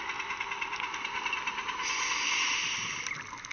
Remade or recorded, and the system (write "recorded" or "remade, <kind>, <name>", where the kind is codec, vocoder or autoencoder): recorded